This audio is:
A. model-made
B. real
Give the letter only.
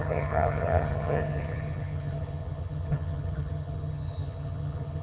A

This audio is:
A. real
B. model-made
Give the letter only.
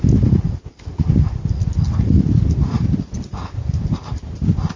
A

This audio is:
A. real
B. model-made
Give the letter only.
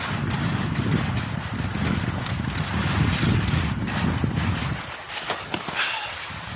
A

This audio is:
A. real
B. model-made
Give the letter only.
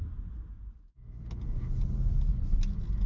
A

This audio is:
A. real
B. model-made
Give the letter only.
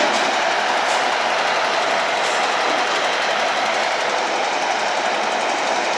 A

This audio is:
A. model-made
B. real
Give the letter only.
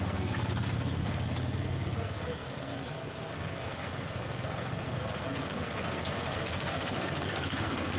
A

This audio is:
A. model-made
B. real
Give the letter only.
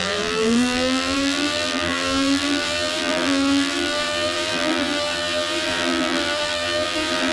A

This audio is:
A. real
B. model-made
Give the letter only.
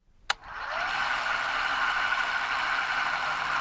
A